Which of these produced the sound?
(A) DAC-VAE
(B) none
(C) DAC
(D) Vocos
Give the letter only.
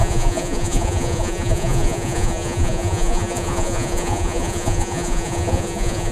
D